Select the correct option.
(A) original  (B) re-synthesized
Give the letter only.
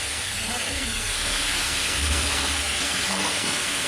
B